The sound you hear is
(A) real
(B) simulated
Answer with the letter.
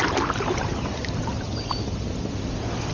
A